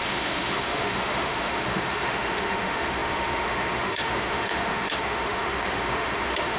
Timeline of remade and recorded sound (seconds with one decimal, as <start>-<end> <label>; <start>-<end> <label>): 0.0-6.6 remade